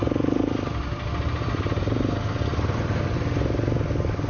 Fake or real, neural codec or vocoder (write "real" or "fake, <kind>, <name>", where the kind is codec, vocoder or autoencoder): real